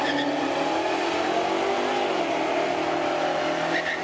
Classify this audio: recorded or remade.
recorded